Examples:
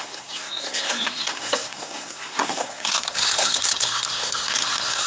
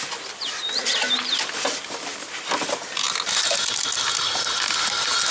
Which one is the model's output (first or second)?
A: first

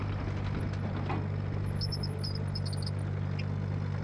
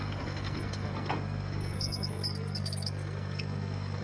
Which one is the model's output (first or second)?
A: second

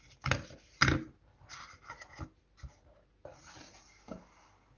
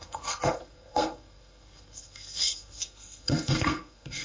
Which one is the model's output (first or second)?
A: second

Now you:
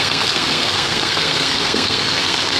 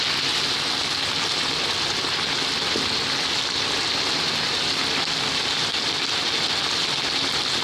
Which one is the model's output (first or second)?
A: first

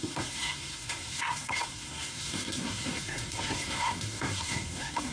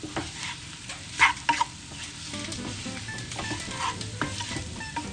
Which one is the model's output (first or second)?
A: first